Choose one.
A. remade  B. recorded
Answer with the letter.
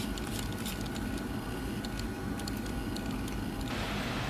B